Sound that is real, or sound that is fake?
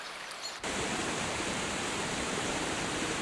fake